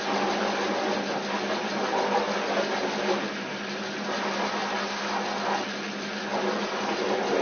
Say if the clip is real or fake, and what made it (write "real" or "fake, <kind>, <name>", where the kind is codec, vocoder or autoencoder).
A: real